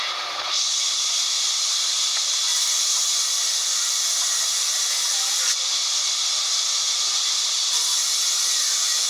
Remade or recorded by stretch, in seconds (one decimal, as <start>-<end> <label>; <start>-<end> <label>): 0.0-9.1 recorded